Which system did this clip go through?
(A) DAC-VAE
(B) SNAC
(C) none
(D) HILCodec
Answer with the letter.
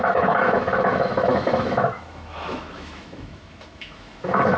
A